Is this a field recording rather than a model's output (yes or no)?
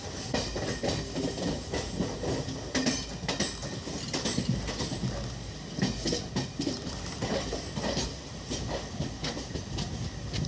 yes